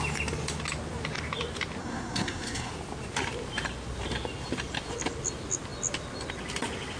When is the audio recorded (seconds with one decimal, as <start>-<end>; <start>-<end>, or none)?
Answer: 0.0-1.8; 2.7-7.0